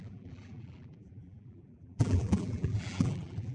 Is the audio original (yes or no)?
no